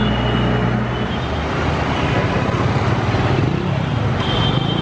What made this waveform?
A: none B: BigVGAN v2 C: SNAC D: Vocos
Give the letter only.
A